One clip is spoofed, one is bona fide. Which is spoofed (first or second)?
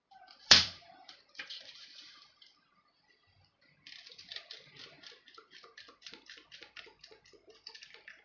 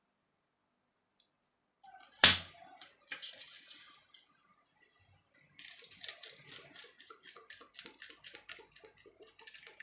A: first